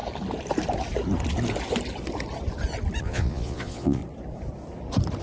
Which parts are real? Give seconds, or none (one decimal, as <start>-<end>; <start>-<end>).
0.0-3.0; 4.0-5.2